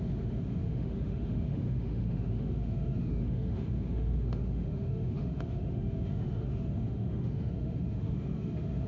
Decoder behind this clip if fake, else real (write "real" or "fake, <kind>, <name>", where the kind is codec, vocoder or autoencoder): fake, autoencoder, DAC-VAE